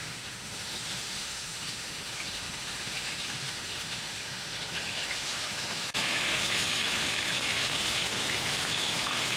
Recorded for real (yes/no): no